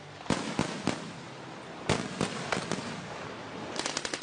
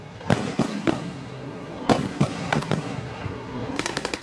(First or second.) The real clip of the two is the first